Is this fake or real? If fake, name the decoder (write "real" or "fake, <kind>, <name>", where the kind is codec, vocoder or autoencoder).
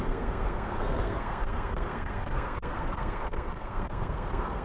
fake, codec, SNAC